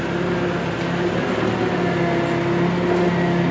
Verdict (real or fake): real